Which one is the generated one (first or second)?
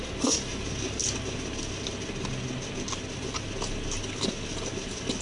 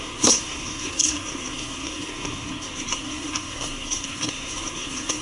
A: second